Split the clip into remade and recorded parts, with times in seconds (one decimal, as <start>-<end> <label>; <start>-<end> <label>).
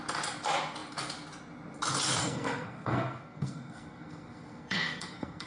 0.0-2.2 recorded; 2.2-5.5 remade